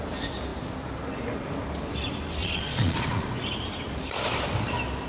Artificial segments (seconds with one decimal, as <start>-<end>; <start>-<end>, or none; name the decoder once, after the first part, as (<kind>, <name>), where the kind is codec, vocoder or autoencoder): 2.4-3.3 (vocoder, Vocos)